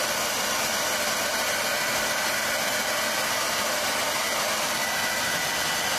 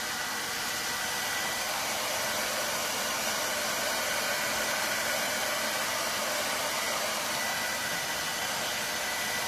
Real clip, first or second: first